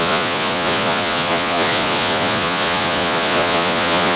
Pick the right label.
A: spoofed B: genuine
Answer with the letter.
A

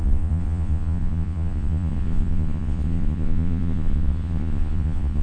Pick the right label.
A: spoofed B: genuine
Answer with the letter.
A